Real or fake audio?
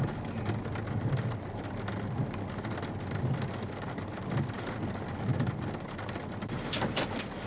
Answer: real